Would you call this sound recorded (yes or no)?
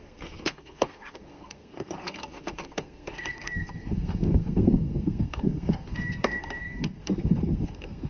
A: no